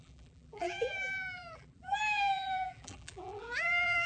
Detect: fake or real fake